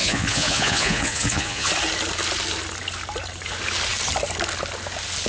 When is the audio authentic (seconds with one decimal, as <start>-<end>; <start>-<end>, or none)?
1.7-5.3